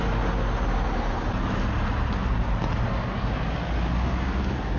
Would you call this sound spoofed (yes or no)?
no